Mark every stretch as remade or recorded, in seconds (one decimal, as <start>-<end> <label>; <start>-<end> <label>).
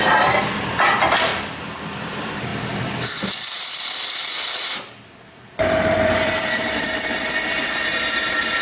0.0-1.3 remade; 1.3-2.0 recorded; 2.0-8.6 remade